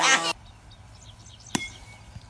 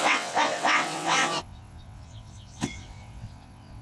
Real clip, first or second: first